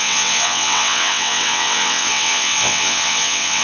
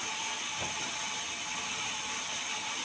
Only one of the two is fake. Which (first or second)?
first